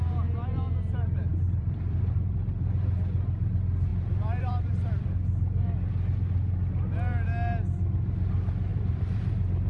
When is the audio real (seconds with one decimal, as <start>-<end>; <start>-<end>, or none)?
0.0-1.3; 2.5-3.9; 5.1-8.7; 9.2-9.7